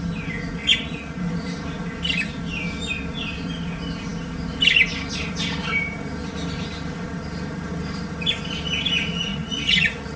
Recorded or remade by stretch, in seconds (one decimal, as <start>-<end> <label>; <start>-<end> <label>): 0.0-0.6 recorded; 0.6-1.2 remade; 1.2-9.3 recorded; 9.3-10.2 remade